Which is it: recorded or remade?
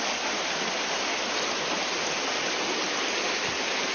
recorded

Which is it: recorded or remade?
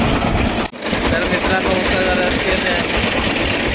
recorded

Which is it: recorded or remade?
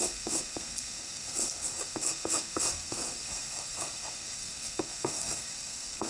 remade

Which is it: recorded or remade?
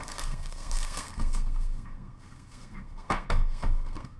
remade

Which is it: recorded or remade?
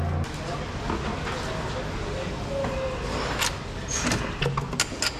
recorded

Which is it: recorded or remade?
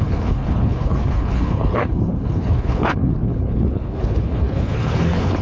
remade